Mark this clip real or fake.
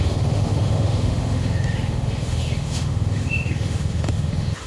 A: fake